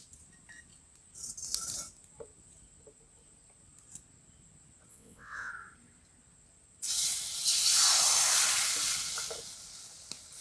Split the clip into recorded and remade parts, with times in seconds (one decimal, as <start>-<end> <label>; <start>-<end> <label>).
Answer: 0.0-4.9 recorded; 4.9-5.5 remade; 5.5-10.4 recorded